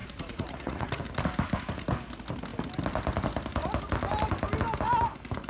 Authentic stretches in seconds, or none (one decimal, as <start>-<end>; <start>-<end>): 1.0-5.5